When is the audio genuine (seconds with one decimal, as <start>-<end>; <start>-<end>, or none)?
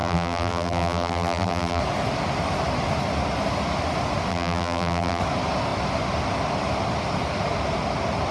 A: 1.8-4.3; 5.2-8.3